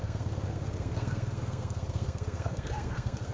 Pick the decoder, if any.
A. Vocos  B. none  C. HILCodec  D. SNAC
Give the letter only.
D